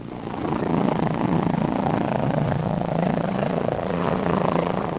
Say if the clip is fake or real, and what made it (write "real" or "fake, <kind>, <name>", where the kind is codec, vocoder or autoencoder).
fake, vocoder, Vocos